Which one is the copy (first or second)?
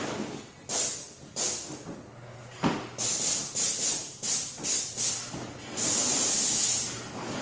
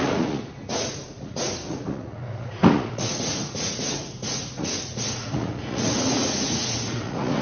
second